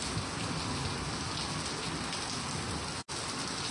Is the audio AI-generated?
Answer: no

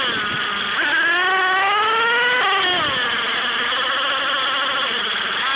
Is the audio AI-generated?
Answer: no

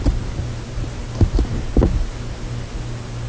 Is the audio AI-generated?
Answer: no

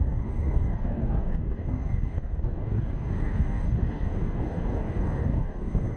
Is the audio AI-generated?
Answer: yes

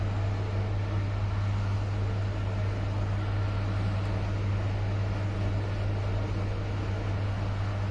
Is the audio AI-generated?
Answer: no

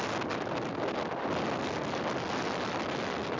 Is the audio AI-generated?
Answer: no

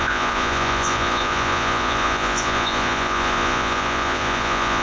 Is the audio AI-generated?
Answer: yes